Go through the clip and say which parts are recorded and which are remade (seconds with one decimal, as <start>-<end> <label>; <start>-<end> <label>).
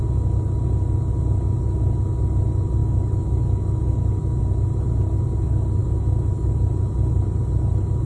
0.0-2.8 recorded; 2.8-4.4 remade; 4.4-5.8 recorded; 5.8-6.5 remade; 6.5-8.1 recorded